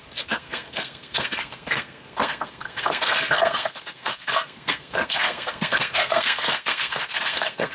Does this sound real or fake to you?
fake